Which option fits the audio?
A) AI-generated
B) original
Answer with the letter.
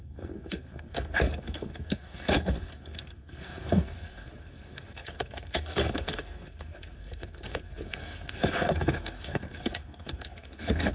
A